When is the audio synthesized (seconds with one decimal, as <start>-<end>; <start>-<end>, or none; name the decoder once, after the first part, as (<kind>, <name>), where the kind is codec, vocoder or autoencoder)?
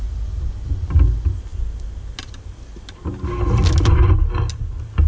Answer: none